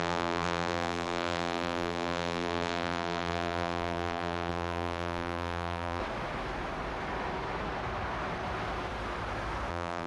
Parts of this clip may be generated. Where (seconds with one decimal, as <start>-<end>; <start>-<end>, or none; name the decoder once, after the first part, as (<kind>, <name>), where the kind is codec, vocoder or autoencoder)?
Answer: 0.0-6.0 (vocoder, BigVGAN v2); 9.7-10.1